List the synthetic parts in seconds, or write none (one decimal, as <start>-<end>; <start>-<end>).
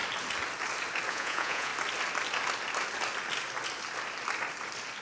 1.1-1.7